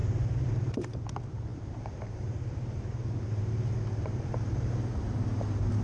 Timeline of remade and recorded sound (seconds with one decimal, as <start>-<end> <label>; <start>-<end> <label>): 0.0-5.8 remade